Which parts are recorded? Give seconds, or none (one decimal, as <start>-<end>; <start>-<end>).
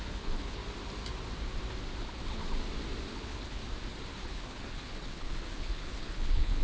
0.6-2.0; 2.4-3.1; 3.6-4.1